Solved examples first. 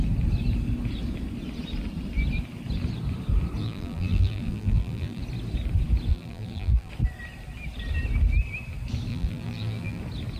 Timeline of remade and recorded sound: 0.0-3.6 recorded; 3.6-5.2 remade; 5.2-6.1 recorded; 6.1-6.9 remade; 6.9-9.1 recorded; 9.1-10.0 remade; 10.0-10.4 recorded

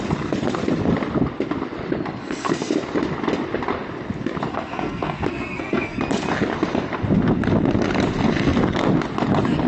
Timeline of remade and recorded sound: 0.0-2.2 recorded; 2.2-2.7 remade; 2.7-4.5 recorded; 4.5-6.0 remade; 6.0-9.7 recorded

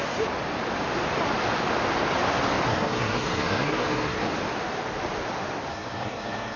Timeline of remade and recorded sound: 0.0-2.7 recorded; 2.7-4.3 remade; 4.3-5.7 recorded; 5.7-6.6 remade

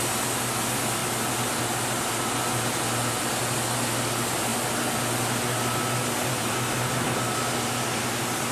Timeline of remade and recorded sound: 0.0-8.5 recorded

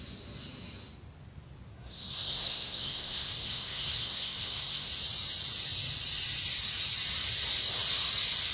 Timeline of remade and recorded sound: 0.0-1.7 recorded; 1.7-4.9 remade; 4.9-8.5 recorded

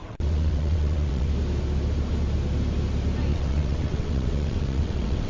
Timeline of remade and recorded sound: 0.0-1.3 remade; 1.3-3.3 recorded; 3.3-5.3 remade

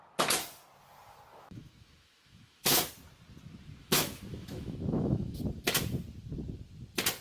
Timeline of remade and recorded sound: 0.0-1.3 recorded; 1.3-2.9 remade; 2.9-3.8 recorded; 3.8-5.4 remade; 5.4-7.2 recorded